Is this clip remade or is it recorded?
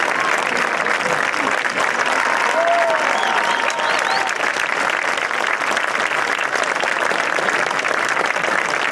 recorded